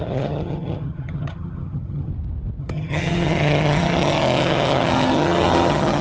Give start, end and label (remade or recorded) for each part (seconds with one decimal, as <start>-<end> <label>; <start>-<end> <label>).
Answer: 0.0-2.1 remade; 2.1-2.6 recorded; 2.6-6.0 remade

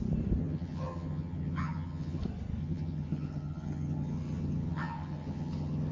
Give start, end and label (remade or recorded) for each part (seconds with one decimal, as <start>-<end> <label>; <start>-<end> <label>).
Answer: 0.0-0.4 recorded; 0.4-2.2 remade; 2.2-2.6 recorded; 2.6-5.9 remade